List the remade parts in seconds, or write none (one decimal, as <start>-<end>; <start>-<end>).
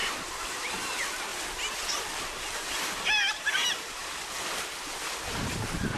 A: 1.3-4.9